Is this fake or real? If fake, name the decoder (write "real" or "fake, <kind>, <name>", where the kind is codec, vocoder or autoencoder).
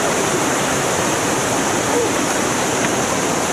fake, vocoder, BigVGAN v2